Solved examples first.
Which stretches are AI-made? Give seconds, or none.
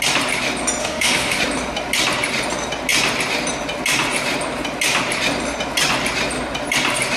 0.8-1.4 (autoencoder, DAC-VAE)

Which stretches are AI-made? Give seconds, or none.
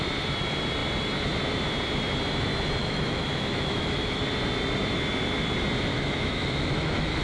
2.8-4.2 (autoencoder, DAC-VAE); 5.9-7.2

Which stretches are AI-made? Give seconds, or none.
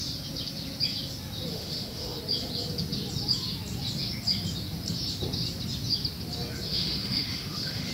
1.5-2.2 (autoencoder, DAC-VAE); 6.7-7.9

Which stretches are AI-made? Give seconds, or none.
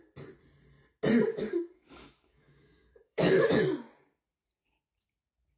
1.3-3.6 (autoencoder, DAC-VAE)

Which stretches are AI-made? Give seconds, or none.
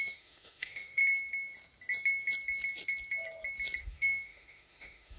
0.0-1.0 (autoencoder, DAC-VAE); 3.8-5.2